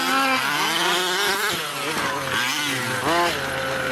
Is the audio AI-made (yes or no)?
no